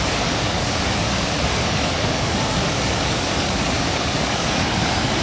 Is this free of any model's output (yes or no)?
no